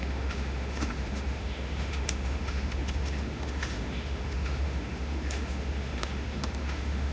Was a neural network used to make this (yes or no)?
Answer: yes